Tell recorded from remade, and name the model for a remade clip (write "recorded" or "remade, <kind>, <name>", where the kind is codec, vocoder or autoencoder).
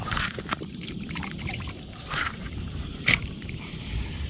remade, vocoder, BigVGAN v2